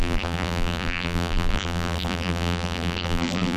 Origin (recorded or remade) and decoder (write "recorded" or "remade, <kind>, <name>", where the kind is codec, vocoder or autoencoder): remade, vocoder, BigVGAN v2